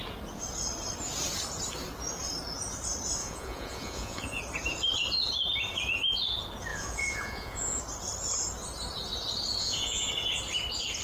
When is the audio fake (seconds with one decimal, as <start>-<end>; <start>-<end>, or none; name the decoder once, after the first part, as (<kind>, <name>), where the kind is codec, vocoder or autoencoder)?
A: 3.2-4.4 (vocoder, Vocos); 6.7-7.8; 9.6-10.1